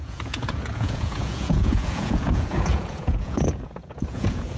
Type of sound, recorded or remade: remade